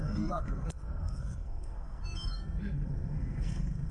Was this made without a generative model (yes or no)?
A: no